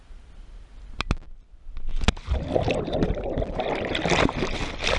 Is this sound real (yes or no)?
yes